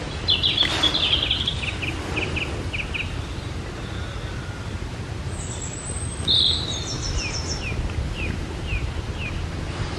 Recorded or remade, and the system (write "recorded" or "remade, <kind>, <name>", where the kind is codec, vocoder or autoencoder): recorded